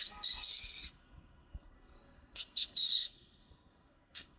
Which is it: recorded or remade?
remade